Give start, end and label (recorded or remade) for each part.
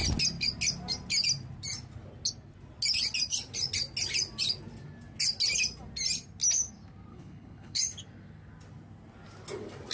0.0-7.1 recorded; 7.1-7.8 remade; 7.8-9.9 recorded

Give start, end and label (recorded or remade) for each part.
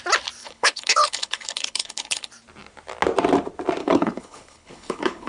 0.0-0.4 recorded; 0.4-2.3 remade; 2.3-3.8 recorded; 3.8-5.3 remade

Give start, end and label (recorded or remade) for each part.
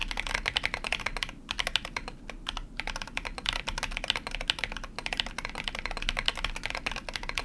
0.0-7.4 recorded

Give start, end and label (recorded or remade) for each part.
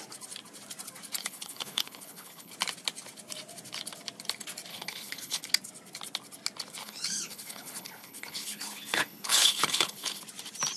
0.0-1.2 recorded; 1.2-2.5 remade; 2.5-4.7 recorded; 4.7-5.4 remade; 5.4-6.8 recorded; 6.8-10.2 remade; 10.2-10.8 recorded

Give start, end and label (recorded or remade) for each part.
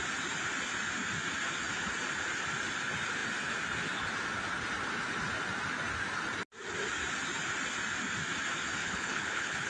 0.0-8.8 recorded; 8.8-9.7 remade